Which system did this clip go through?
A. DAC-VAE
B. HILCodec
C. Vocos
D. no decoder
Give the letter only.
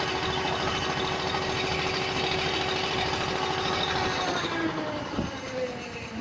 D